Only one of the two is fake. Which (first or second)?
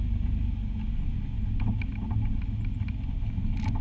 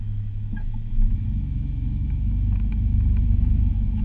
second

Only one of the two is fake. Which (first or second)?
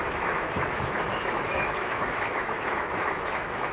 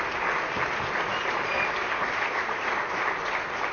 first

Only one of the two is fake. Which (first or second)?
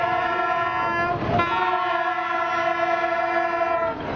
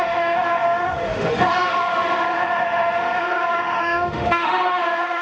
second